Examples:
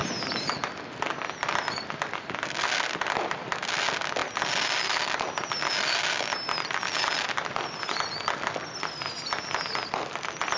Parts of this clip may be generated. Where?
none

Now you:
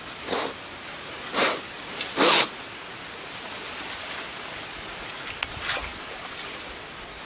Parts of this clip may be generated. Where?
none

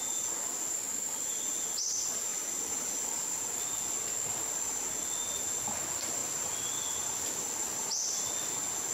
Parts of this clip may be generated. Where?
none

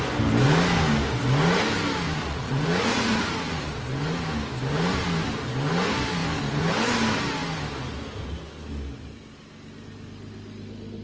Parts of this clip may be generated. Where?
2.2-3.7

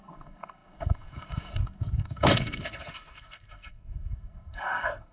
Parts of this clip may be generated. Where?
0.0-5.1

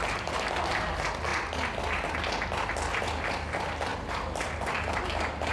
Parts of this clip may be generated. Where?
3.9-4.6

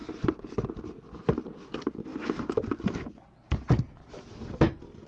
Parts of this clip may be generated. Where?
none